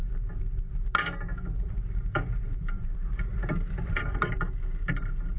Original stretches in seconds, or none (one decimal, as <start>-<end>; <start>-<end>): 0.0-1.3; 4.5-5.4